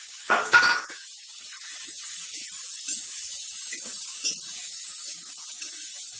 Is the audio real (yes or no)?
no